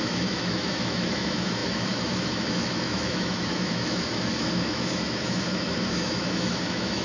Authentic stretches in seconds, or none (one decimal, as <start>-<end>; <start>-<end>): none